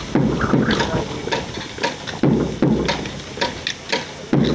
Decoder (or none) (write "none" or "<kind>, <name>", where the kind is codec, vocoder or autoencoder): none